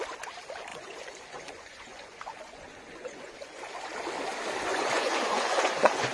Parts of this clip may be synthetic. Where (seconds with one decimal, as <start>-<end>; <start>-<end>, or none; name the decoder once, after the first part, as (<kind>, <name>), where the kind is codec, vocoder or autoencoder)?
0.7-3.7 (vocoder, Vocos); 4.7-6.1